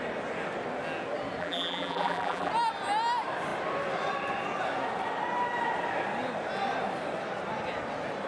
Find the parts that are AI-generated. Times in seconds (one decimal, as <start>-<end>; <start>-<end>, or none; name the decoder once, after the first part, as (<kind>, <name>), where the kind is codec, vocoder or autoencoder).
1.4-2.5 (vocoder, BigVGAN v2)